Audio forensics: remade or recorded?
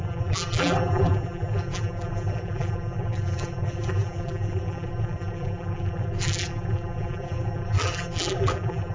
remade